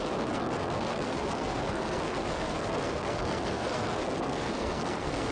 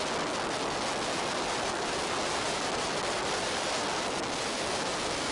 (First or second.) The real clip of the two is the second